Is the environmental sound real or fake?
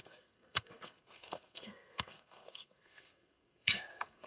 fake